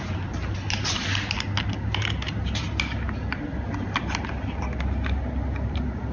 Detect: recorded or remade recorded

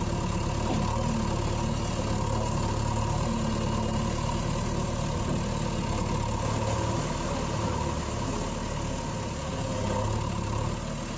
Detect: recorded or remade recorded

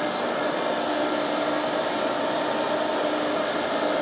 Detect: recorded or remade recorded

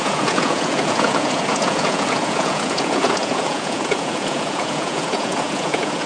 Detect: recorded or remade remade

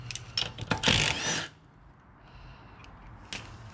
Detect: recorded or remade recorded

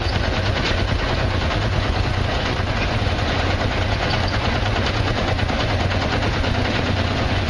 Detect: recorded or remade remade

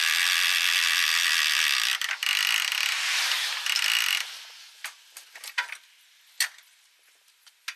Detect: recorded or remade recorded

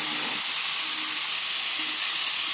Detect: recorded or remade recorded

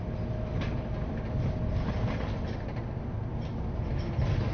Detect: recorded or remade recorded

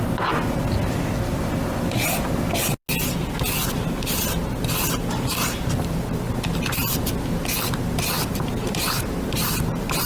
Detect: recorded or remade recorded